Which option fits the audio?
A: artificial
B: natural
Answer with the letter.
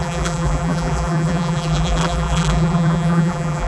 A